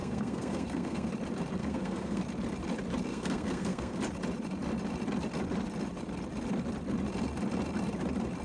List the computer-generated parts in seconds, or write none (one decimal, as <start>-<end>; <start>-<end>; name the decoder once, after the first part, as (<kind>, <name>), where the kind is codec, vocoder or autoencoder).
0.0-1.1 (codec, SNAC); 1.6-2.2; 3.1-4.0